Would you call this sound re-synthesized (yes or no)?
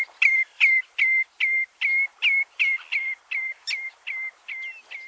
no